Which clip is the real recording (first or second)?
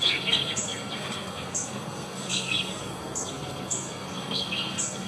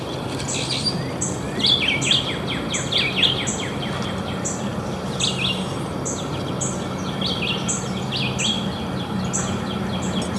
second